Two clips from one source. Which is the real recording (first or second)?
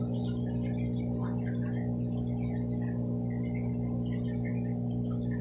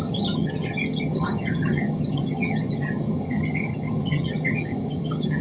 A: first